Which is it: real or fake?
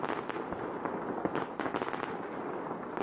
real